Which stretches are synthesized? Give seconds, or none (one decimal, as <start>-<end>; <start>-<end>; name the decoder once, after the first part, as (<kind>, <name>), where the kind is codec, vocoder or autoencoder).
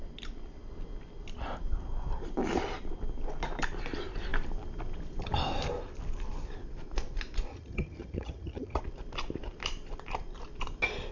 7.5-8.8 (vocoder, HiFi-GAN)